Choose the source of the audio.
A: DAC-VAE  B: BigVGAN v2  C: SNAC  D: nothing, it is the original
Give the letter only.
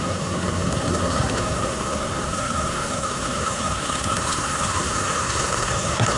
C